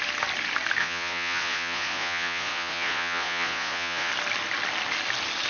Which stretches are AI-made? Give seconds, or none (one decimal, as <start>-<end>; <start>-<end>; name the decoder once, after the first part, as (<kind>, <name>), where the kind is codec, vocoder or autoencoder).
0.8-4.1 (vocoder, Vocos)

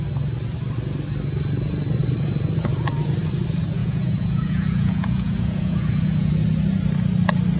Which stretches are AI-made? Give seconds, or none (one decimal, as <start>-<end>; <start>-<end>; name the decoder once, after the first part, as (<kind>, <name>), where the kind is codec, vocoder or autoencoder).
3.8-6.3 (vocoder, Vocos)